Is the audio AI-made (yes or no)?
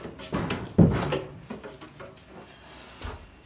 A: no